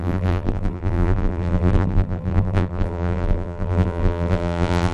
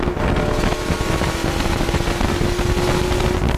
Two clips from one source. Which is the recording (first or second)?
second